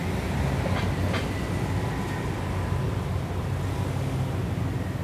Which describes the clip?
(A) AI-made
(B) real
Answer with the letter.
B